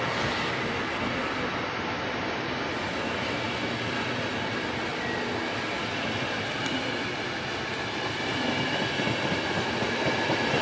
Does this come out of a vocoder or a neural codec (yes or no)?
no